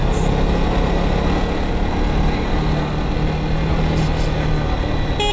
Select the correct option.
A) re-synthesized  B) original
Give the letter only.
B